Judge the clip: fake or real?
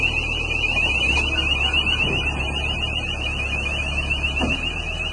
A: real